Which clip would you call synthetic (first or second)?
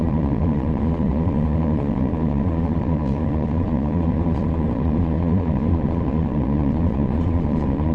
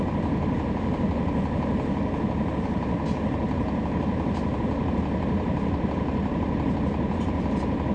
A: first